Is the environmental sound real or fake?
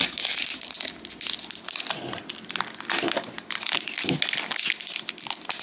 real